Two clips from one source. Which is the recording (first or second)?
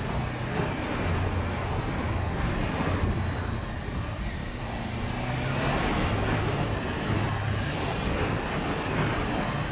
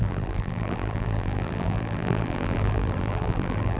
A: first